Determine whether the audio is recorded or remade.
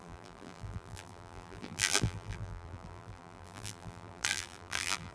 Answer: remade